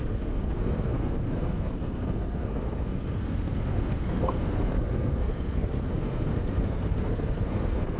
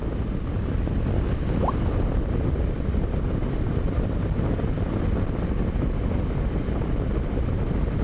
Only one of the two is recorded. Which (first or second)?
second